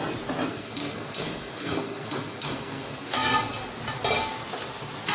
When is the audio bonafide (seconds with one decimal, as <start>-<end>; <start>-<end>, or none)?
0.0-0.5; 3.3-5.1